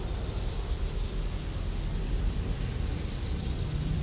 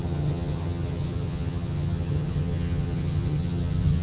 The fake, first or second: second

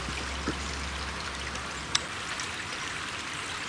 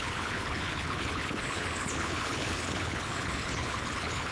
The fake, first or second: second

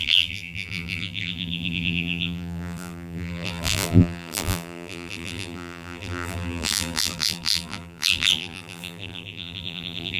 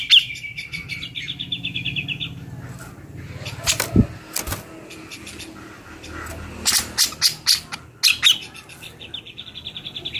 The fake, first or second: first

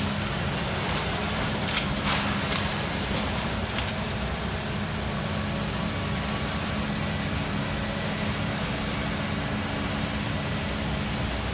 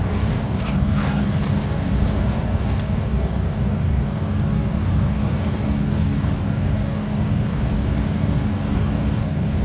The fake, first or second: second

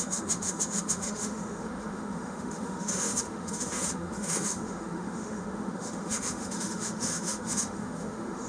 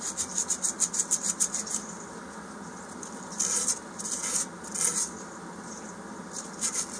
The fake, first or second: first